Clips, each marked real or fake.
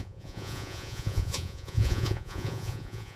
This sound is fake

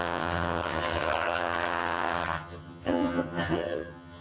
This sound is fake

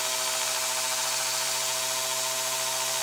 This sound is real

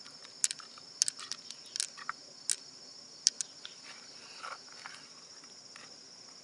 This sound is real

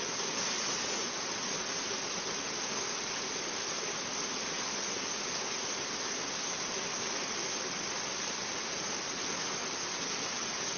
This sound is real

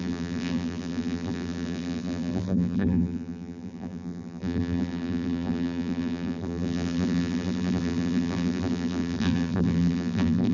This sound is fake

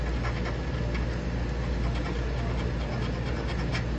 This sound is real